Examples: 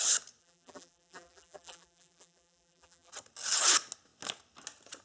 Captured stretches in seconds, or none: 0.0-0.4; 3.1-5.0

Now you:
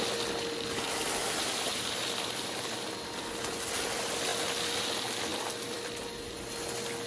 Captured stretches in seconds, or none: 0.0-1.2; 2.9-5.3; 6.3-7.1